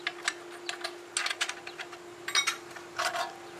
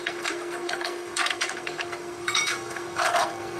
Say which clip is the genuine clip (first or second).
first